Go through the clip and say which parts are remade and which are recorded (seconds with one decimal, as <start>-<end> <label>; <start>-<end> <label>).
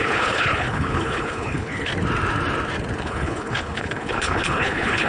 0.0-1.9 remade; 1.9-3.0 recorded; 3.0-5.1 remade